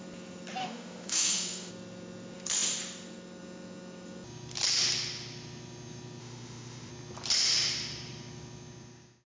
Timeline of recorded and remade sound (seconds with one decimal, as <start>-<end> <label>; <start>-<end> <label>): 0.0-0.6 recorded; 0.6-1.7 remade; 1.7-6.2 recorded; 6.2-6.9 remade; 6.9-9.3 recorded